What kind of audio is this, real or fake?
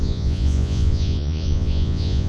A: fake